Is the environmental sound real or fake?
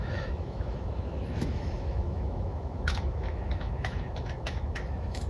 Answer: fake